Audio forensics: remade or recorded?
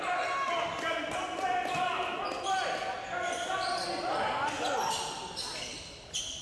recorded